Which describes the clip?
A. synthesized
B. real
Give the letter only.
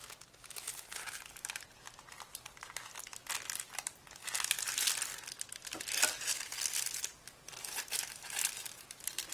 B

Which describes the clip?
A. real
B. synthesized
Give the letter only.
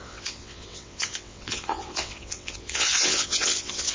B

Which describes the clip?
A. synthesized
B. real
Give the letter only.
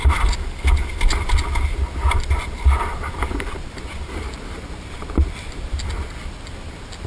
B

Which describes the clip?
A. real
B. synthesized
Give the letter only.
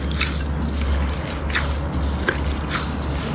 A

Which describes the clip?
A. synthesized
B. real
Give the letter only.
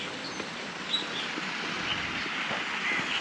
B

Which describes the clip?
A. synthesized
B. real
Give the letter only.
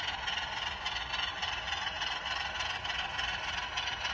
B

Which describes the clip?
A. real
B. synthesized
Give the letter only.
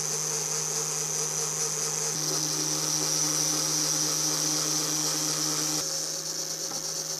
A